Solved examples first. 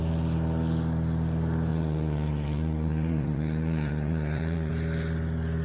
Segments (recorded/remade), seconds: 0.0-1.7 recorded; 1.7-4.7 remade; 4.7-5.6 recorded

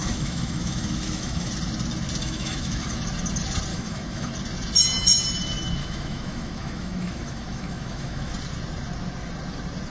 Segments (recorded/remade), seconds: 0.0-1.5 remade; 1.5-2.2 recorded; 2.2-3.0 remade; 3.0-3.7 recorded; 3.7-4.3 remade; 4.3-5.8 recorded; 5.8-8.3 remade; 8.3-9.9 recorded

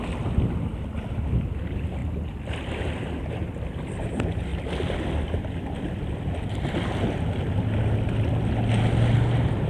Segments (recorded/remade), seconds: 0.0-0.7 recorded; 0.7-1.6 remade; 1.6-4.5 recorded; 4.5-7.3 remade; 7.3-9.7 recorded

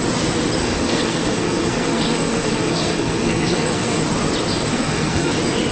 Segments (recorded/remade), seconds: 0.0-0.6 recorded; 0.6-4.0 remade; 4.0-4.7 recorded; 4.7-5.3 remade; 5.3-5.7 recorded